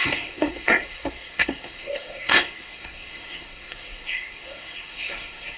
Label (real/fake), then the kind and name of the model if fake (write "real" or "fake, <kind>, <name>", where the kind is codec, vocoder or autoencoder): fake, codec, SNAC